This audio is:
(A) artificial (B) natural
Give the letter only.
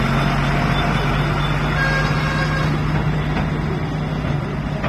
B